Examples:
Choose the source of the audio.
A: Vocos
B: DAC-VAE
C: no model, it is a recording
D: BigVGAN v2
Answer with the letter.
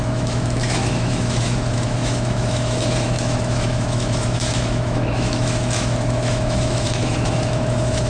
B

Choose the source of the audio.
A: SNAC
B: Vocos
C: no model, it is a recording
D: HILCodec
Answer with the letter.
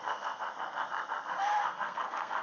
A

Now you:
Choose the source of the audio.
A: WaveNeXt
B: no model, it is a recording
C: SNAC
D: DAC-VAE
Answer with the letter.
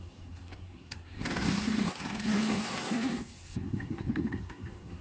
C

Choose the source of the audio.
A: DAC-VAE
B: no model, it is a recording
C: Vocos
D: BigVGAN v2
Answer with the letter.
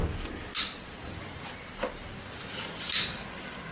B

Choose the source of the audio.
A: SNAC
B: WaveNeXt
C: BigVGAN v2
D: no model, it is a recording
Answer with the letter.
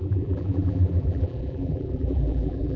C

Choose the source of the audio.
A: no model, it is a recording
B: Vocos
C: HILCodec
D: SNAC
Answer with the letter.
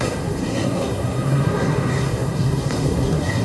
D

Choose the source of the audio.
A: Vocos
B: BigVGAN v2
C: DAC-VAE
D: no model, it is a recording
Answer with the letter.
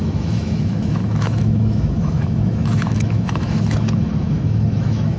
C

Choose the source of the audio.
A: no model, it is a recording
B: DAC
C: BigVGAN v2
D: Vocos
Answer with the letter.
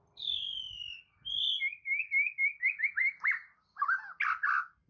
A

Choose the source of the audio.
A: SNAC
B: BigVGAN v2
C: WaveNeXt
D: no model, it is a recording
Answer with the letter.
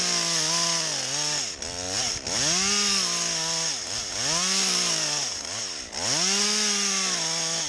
D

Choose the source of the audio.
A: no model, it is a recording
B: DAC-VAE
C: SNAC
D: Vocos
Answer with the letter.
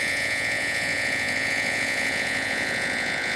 D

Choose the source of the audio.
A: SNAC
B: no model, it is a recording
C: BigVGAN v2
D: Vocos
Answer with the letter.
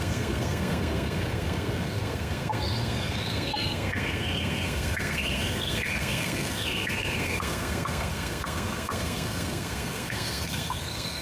A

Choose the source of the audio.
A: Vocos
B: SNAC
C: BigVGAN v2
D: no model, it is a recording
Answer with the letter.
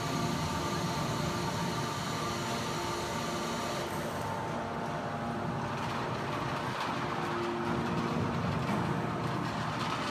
D